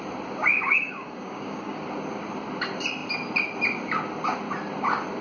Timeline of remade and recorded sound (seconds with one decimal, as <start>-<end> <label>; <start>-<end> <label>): 0.0-0.5 recorded; 0.5-1.8 remade; 1.8-5.2 recorded